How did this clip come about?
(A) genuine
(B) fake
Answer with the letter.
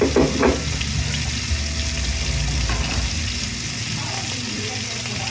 A